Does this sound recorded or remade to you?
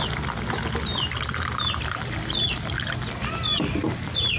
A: recorded